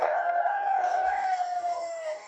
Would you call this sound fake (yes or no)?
yes